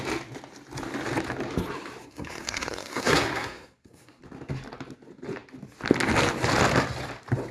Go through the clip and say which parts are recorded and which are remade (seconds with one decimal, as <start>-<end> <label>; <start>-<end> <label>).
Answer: 0.0-2.0 recorded; 2.0-4.2 remade; 4.2-7.5 recorded